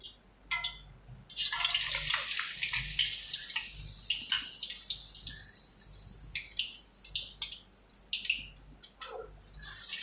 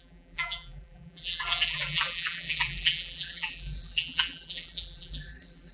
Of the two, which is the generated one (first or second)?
second